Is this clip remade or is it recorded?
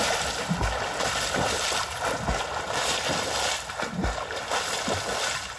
recorded